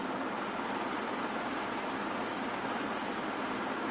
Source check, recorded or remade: recorded